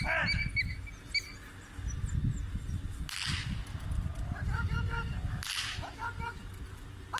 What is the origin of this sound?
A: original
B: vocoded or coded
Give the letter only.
A